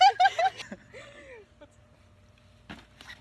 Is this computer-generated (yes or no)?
no